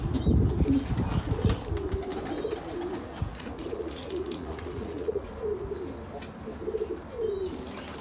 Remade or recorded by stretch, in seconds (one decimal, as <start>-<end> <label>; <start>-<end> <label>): 0.0-3.3 recorded; 3.3-5.3 remade; 5.3-8.0 recorded